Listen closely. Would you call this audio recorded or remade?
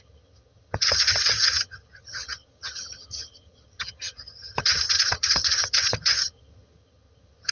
remade